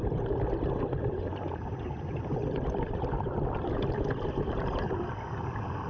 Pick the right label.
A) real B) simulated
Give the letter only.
A